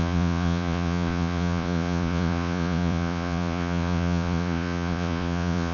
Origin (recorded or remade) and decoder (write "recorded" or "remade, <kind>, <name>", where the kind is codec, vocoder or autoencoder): remade, vocoder, Vocos